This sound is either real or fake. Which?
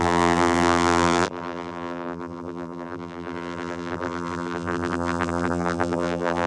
fake